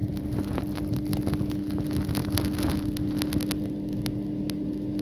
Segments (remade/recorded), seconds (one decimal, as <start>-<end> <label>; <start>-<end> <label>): 0.0-5.0 recorded